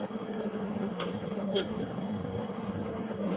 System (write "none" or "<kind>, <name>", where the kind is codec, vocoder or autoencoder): codec, SNAC